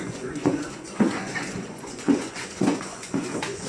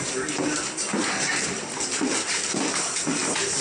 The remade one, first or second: first